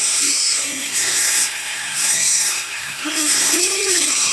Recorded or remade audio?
remade